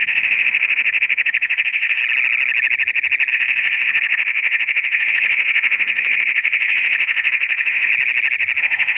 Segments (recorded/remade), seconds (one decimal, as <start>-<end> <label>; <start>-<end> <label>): 0.0-2.0 remade; 2.0-3.3 recorded; 3.3-7.9 remade; 7.9-8.6 recorded; 8.6-9.0 remade